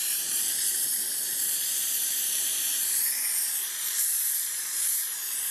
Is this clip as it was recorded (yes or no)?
no